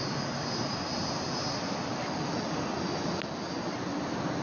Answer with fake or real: real